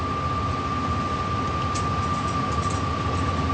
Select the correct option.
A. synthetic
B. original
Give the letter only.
B